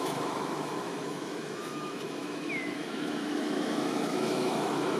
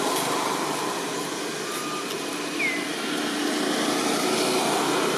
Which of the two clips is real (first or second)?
second